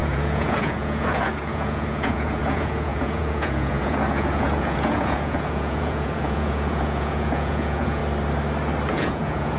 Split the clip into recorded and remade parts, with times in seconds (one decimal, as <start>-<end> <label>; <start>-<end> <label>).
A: 0.0-8.0 remade; 8.0-8.9 recorded; 8.9-9.6 remade